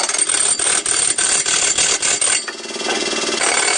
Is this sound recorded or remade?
recorded